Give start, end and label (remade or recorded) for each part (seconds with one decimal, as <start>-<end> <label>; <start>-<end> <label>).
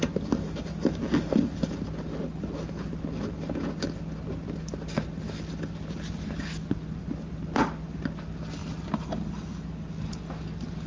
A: 0.0-8.6 recorded; 8.6-9.3 remade; 9.3-10.9 recorded